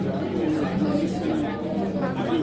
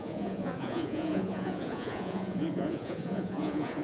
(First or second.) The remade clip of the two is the second